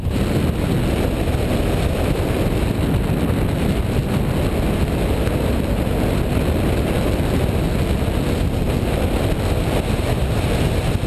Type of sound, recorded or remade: recorded